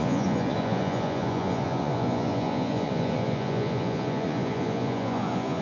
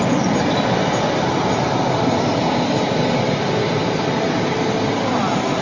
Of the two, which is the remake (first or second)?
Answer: first